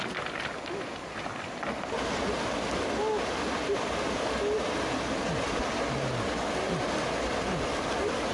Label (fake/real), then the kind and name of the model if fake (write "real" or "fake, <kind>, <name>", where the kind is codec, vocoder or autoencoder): real